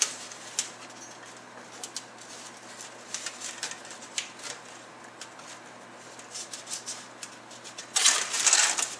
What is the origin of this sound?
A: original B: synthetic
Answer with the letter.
A